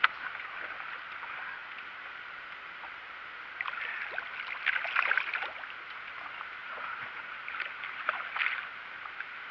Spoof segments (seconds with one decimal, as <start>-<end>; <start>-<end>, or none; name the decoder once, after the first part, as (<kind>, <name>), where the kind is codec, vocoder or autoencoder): 1.6-2.1 (vocoder, Vocos); 6.6-7.4